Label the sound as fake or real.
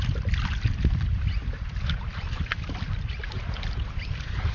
real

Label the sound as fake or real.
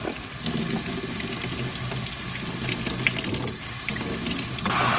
real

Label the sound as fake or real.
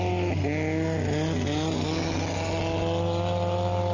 real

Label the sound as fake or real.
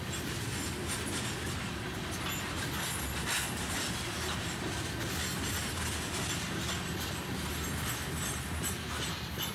real